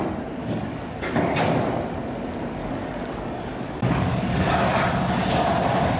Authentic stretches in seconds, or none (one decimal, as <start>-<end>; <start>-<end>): 0.0-0.4; 1.5-2.6; 4.7-6.0